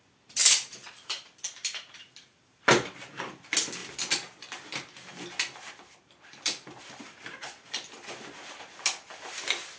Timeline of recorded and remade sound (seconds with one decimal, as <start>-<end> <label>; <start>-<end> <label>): 0.0-9.8 recorded